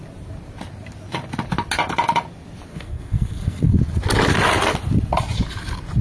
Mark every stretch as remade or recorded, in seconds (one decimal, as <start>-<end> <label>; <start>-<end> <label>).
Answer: 0.0-2.7 recorded; 2.7-3.8 remade; 3.8-6.0 recorded